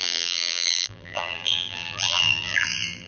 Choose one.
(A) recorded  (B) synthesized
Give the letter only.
B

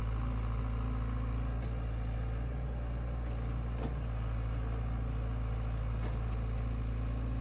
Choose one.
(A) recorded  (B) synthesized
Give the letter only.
A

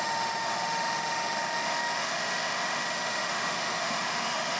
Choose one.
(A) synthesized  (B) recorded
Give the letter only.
A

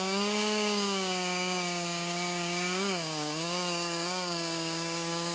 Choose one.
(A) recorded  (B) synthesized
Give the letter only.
B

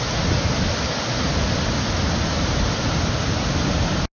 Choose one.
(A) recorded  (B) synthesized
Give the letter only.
A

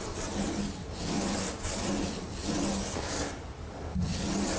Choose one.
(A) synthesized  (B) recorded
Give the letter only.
B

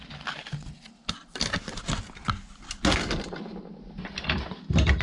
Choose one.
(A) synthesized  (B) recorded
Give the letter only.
B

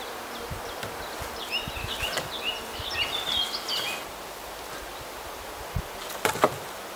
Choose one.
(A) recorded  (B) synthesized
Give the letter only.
A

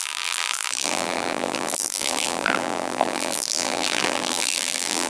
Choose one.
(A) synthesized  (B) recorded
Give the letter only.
A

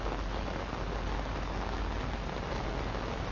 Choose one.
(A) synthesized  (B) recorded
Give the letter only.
B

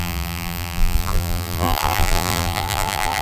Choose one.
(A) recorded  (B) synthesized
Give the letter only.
B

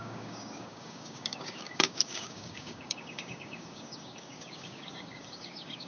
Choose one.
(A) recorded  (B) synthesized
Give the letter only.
B